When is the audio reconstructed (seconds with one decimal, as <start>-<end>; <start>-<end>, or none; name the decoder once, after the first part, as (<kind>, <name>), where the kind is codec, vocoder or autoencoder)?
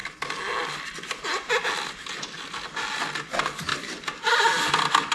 3.7-4.3 (vocoder, BigVGAN v2)